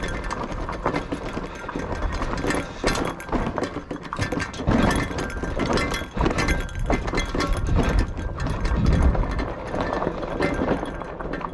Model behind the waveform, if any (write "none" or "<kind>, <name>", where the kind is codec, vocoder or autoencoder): none